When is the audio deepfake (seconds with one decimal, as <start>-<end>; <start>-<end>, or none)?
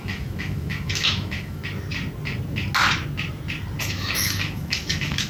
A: 0.0-1.6; 3.8-5.3